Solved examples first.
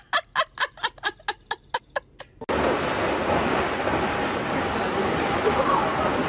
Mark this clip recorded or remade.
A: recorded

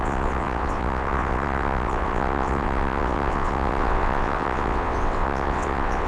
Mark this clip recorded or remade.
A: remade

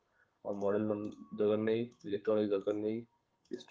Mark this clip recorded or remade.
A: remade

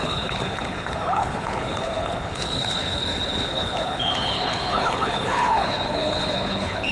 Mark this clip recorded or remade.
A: remade